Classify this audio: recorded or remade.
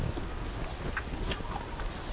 recorded